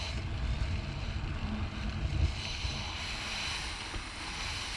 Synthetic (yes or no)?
no